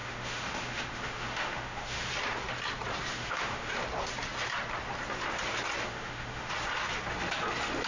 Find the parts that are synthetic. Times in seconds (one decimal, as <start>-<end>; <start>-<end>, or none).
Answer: 0.0-2.1; 3.1-3.7; 5.8-6.5